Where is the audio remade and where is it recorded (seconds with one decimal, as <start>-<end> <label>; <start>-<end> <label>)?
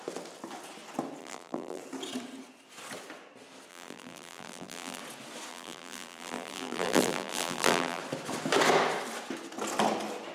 0.0-1.2 recorded; 1.2-1.8 remade; 1.8-3.7 recorded; 3.7-5.0 remade; 5.0-5.5 recorded; 5.5-8.0 remade; 8.0-10.3 recorded